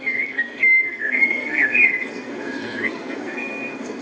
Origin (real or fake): fake